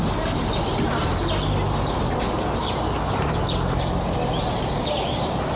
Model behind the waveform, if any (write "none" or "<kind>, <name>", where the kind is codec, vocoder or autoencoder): none